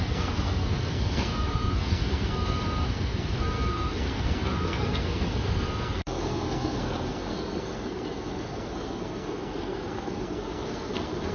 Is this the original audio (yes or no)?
no